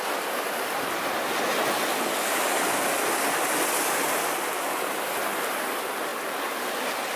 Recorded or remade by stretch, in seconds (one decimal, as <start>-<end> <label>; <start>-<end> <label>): 0.0-7.2 recorded